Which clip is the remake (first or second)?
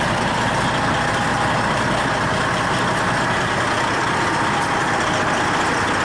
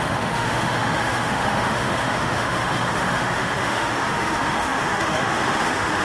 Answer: second